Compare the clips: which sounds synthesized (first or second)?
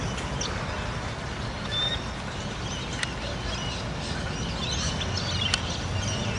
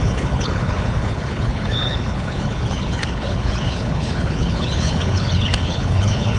second